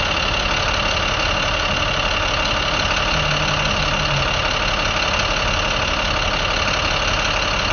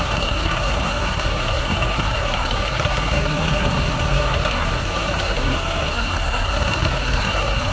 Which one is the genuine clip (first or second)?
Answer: first